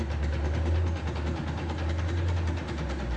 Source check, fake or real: real